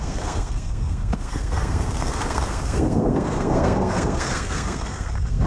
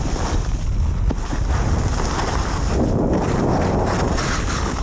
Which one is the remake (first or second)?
first